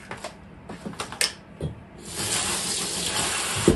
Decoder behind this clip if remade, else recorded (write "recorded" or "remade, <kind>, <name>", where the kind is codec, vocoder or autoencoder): recorded